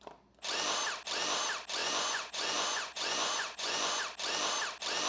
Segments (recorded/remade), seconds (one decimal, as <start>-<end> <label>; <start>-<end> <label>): 0.0-1.8 recorded; 1.8-4.0 remade; 4.0-5.1 recorded